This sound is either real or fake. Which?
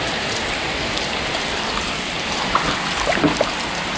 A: fake